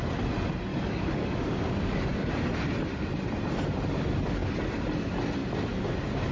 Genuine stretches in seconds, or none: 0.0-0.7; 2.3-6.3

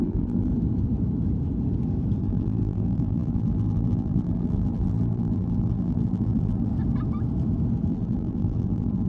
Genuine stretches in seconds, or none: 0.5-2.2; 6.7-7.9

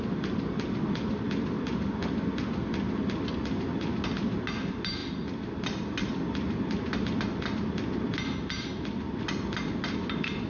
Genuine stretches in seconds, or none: 0.0-10.5

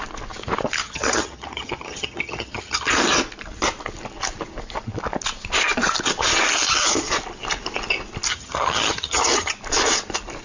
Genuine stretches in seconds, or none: 0.0-0.8; 2.9-8.3; 9.5-10.4

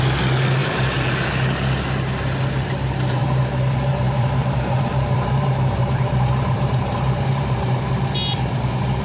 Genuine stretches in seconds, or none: 0.0-0.6; 1.3-3.2; 7.8-9.0